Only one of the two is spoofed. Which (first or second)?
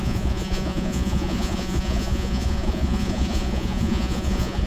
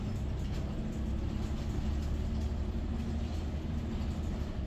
first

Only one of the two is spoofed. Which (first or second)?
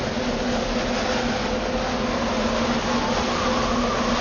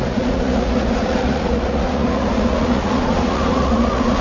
second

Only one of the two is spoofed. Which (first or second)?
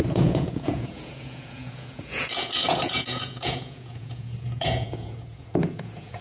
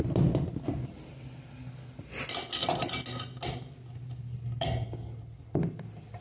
first